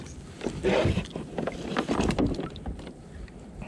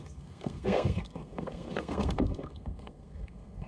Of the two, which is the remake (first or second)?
second